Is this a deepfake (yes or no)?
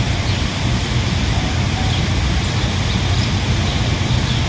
no